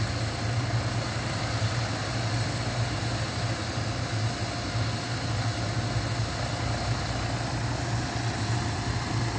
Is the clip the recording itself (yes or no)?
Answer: yes